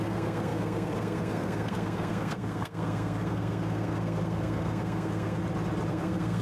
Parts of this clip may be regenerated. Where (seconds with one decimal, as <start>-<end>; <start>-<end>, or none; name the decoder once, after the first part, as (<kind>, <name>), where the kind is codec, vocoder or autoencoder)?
0.0-5.4 (codec, SNAC); 5.9-6.4